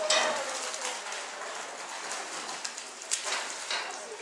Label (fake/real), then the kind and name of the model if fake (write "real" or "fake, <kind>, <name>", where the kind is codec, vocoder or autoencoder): real